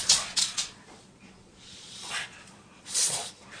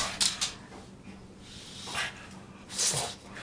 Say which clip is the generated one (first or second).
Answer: first